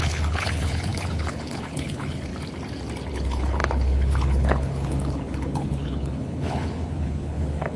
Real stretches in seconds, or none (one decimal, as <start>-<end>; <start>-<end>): 2.3-3.1